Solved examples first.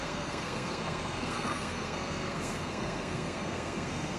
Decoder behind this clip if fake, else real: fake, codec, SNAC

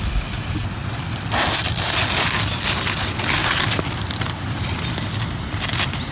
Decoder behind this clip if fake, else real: real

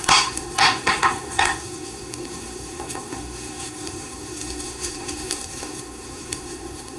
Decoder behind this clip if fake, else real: fake, codec, SNAC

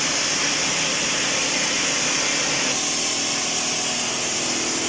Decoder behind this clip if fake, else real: real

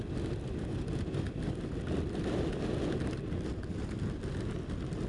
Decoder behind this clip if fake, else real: real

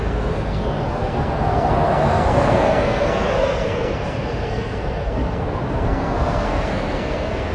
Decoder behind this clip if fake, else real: fake, codec, SNAC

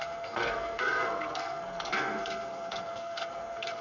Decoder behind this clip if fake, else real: fake, codec, SNAC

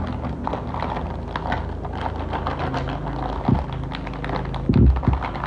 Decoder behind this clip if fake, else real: real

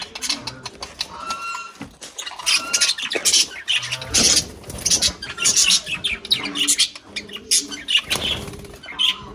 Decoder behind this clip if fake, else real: real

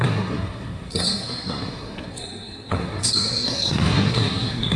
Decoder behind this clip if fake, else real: fake, codec, SNAC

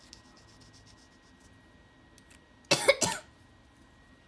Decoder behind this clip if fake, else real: real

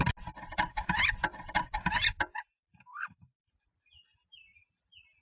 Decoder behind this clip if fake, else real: real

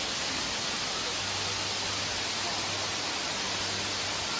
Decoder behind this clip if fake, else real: real